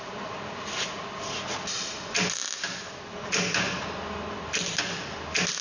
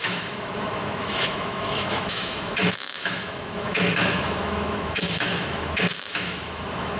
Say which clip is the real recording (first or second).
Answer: first